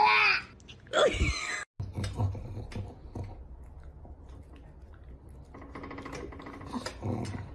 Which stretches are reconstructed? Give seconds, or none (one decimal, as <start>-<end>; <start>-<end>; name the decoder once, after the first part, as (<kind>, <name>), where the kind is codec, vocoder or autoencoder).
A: none